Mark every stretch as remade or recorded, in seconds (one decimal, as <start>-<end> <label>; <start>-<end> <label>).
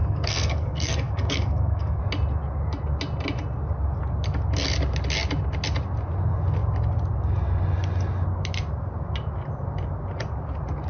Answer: 0.0-2.0 remade; 2.0-10.9 recorded